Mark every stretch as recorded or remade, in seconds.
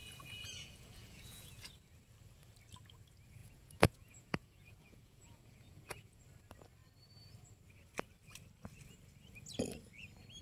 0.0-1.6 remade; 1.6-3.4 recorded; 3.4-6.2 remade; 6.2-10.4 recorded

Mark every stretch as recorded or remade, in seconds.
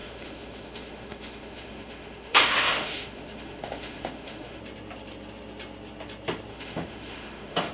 0.0-4.6 remade; 4.6-6.5 recorded; 6.5-7.7 remade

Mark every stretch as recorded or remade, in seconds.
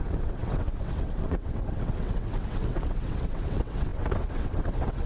0.0-5.1 remade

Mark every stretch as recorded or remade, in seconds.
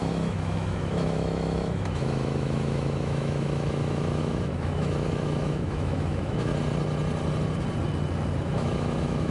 0.0-6.5 remade; 6.5-8.4 recorded; 8.4-9.3 remade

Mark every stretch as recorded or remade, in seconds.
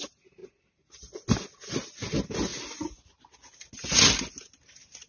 0.0-5.1 recorded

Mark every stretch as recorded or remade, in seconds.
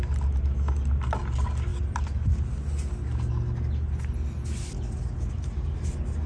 0.0-6.3 recorded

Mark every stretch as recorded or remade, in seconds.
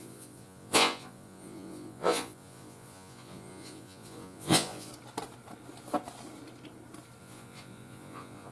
0.0-4.9 remade; 4.9-7.2 recorded; 7.2-8.5 remade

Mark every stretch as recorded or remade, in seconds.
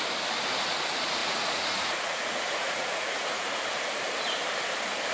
0.0-1.2 recorded; 1.2-3.6 remade; 3.6-5.1 recorded